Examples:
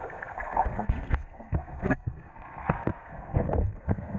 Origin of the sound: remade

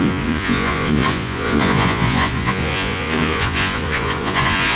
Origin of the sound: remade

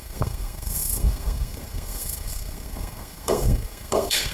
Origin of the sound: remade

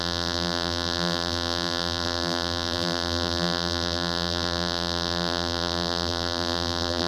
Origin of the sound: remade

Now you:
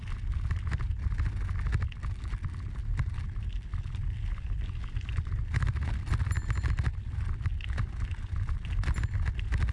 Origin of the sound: recorded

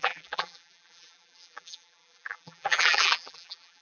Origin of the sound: remade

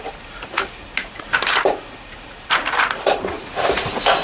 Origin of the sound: recorded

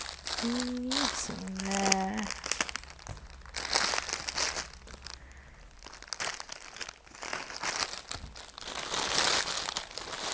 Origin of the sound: recorded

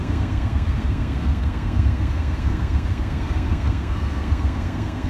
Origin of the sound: remade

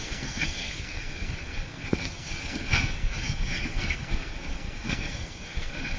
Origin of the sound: remade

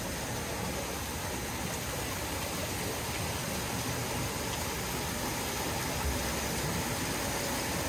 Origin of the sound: recorded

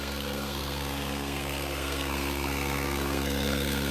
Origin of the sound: remade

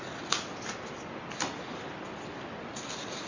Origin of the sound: recorded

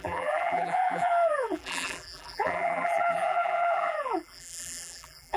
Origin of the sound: remade